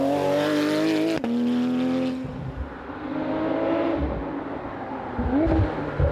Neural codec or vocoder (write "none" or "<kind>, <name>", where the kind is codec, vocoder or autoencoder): none